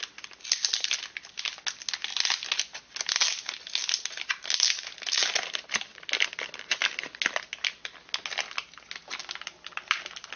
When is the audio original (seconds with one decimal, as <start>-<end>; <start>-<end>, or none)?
0.0-9.2; 10.0-10.4